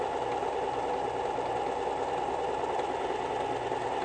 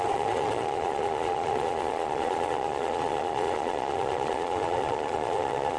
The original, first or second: first